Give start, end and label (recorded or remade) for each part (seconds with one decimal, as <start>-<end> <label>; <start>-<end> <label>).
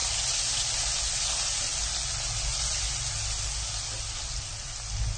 0.0-5.2 recorded